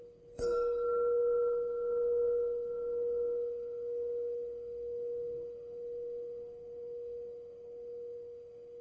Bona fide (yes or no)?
no